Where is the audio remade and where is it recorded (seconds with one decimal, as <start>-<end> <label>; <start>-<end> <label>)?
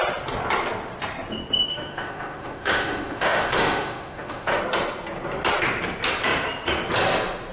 0.0-1.7 recorded; 1.7-4.6 remade; 4.6-7.5 recorded